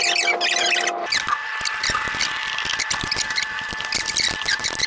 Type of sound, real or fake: real